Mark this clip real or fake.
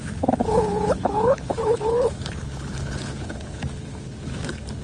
fake